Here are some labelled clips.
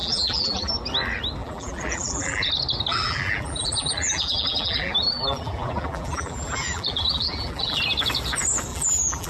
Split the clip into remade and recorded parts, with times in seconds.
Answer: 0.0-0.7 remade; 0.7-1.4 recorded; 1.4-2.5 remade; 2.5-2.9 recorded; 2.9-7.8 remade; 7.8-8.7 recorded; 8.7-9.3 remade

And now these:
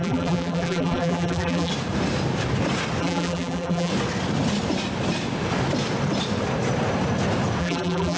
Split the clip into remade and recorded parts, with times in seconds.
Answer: 0.0-1.7 remade; 1.7-3.0 recorded; 3.0-3.9 remade; 3.9-7.6 recorded; 7.6-8.2 remade

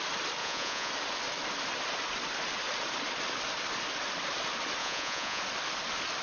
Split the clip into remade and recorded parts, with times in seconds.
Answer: 0.0-0.4 recorded; 0.4-0.9 remade; 0.9-4.8 recorded; 4.8-5.4 remade; 5.4-6.2 recorded

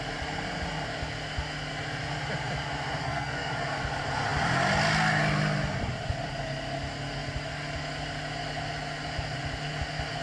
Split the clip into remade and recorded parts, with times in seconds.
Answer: 0.0-3.0 recorded; 3.0-3.5 remade; 3.5-10.2 recorded

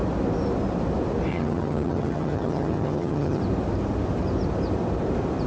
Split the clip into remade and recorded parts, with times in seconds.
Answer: 0.0-1.3 recorded; 1.3-3.4 remade; 3.4-5.5 recorded

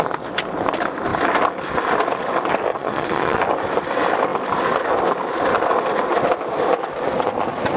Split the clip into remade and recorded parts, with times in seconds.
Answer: 0.0-2.7 recorded; 2.7-3.4 remade; 3.4-7.8 recorded